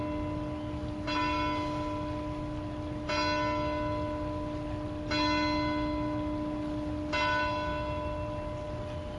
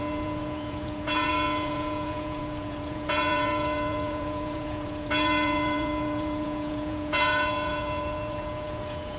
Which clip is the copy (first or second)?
second